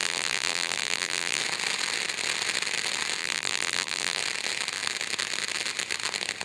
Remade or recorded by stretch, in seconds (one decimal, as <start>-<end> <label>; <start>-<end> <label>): 0.0-1.4 remade; 1.4-3.2 recorded; 3.2-4.2 remade; 4.2-6.4 recorded